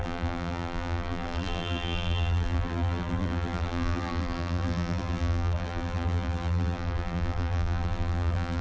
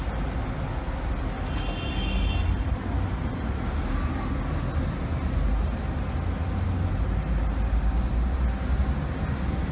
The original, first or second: second